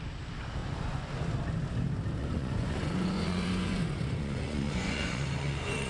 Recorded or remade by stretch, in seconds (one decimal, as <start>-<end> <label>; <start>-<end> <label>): 0.0-0.6 recorded; 0.6-1.1 remade; 1.1-2.2 recorded; 2.2-5.9 remade